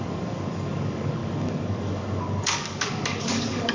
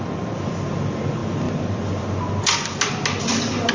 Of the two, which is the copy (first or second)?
first